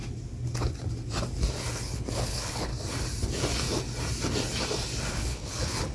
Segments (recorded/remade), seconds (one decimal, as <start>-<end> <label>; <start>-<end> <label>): 0.0-1.7 recorded; 1.7-2.7 remade; 2.7-5.1 recorded; 5.1-5.9 remade